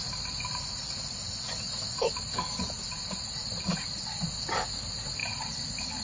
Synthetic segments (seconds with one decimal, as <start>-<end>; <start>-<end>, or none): none